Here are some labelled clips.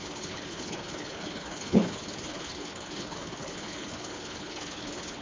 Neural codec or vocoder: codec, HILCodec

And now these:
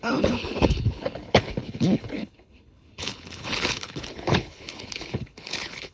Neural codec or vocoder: codec, HILCodec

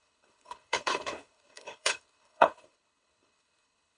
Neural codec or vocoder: codec, HILCodec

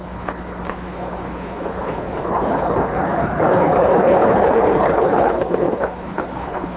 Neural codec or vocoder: codec, HILCodec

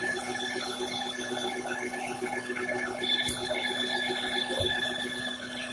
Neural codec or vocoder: codec, HILCodec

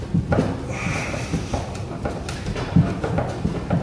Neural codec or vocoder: none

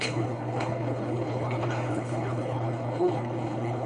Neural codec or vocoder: codec, HILCodec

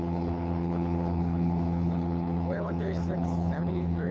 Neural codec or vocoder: codec, HILCodec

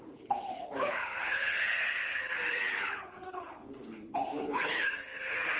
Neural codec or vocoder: codec, HILCodec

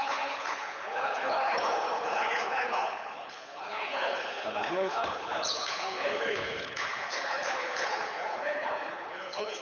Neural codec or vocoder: codec, HILCodec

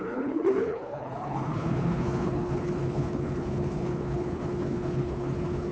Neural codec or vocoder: codec, HILCodec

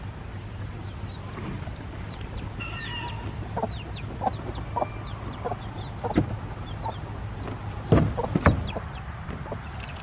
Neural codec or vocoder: none